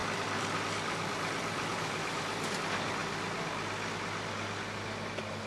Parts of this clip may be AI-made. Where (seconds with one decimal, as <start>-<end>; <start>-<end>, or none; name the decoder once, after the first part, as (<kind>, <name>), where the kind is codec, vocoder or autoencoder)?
0.0-0.6 (vocoder, BigVGAN v2)